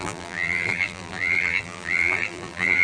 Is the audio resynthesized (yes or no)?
yes